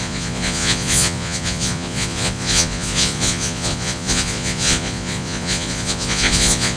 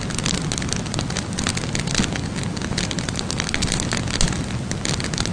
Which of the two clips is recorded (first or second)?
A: second